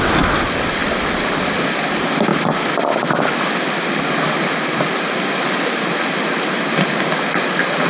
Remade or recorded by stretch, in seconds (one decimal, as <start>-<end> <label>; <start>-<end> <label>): 0.0-7.9 recorded